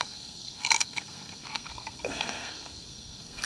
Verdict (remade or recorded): remade